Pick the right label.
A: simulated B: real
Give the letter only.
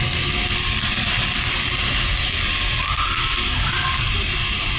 B